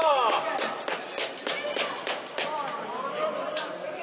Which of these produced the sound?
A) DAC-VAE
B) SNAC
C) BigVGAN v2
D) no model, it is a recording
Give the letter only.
D